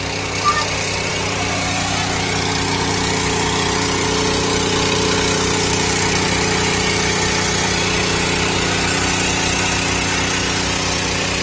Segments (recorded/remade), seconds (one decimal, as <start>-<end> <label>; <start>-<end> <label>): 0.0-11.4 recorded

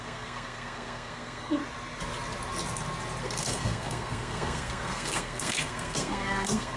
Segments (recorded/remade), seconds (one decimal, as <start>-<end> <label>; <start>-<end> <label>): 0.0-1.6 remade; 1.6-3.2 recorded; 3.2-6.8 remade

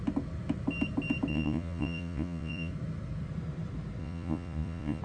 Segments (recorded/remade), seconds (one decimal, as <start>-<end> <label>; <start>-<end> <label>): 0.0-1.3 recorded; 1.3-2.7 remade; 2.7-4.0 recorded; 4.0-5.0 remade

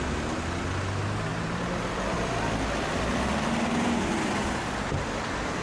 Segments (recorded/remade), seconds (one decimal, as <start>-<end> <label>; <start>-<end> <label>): 0.0-1.3 recorded; 1.3-2.4 remade; 2.4-5.6 recorded

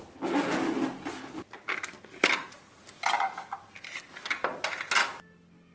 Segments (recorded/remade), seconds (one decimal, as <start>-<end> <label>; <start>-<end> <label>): 0.0-5.7 recorded

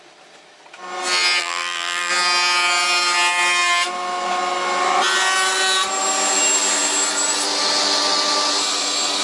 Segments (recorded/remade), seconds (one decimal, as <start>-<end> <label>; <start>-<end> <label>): 0.0-1.4 recorded; 1.4-2.1 remade; 2.1-9.2 recorded

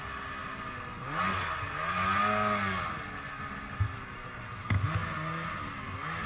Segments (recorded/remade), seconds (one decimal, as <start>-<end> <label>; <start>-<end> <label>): 0.0-6.3 recorded